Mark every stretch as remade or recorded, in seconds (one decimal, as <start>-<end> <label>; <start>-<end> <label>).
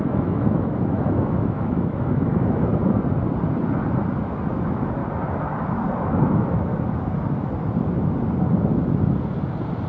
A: 0.0-2.7 remade; 2.7-4.5 recorded; 4.5-5.0 remade; 5.0-6.0 recorded; 6.0-6.7 remade; 6.7-9.9 recorded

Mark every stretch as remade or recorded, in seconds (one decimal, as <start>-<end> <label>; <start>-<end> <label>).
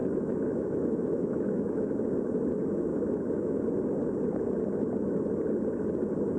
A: 0.0-1.9 remade; 1.9-2.9 recorded; 2.9-3.6 remade; 3.6-6.4 recorded